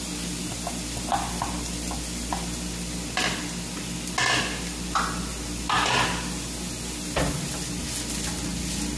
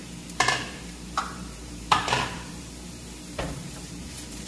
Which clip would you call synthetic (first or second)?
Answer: second